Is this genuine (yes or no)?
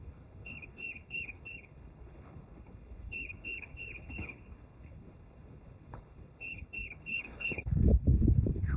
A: no